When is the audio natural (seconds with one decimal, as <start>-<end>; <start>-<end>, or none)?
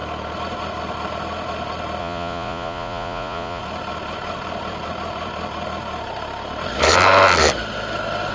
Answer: 0.0-2.0; 3.6-8.3